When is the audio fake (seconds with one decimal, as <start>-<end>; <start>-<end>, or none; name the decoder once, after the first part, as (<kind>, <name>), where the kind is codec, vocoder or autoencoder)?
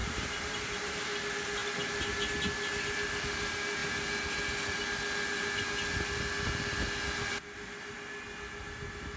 0.0-1.0 (vocoder, BigVGAN v2)